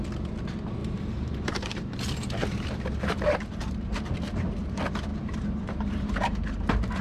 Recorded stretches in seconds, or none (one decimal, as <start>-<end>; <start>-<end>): 0.0-0.8; 4.1-5.1; 6.4-7.0